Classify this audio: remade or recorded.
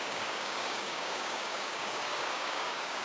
remade